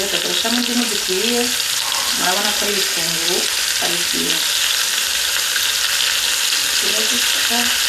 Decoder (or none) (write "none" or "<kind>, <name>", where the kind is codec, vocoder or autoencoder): none